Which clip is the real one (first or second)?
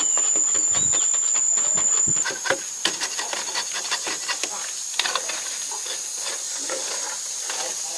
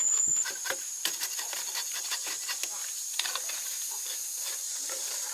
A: first